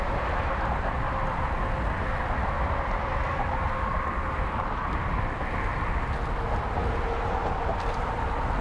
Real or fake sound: real